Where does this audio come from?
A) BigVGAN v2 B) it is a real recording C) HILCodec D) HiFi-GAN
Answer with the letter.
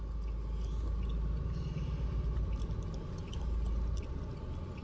B